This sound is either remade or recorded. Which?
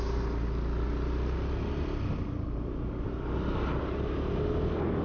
recorded